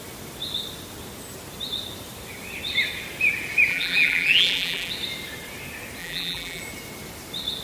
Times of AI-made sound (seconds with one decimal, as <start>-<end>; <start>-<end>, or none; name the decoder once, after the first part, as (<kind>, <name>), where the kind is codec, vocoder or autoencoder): 3.7-4.9 (vocoder, BigVGAN v2); 6.0-6.6